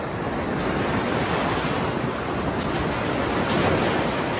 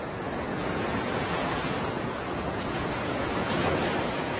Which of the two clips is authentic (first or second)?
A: first